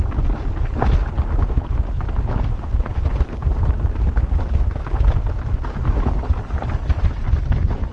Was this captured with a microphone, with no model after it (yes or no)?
yes